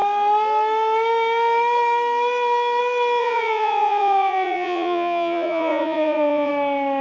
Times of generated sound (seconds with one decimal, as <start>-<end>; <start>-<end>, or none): 3.2-6.5